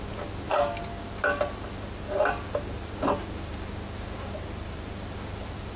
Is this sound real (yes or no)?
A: yes